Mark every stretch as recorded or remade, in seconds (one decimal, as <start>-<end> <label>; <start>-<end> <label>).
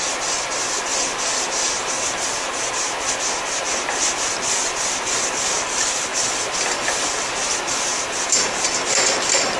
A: 0.0-9.6 recorded